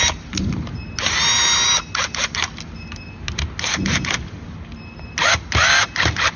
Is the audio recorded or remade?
recorded